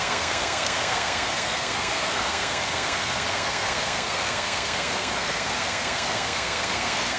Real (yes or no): no